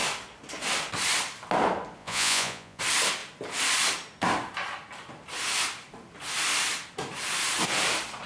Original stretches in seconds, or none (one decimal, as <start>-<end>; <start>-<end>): 0.0-2.0; 2.8-8.3